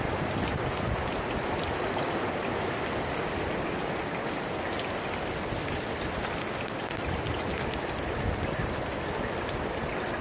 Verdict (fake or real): real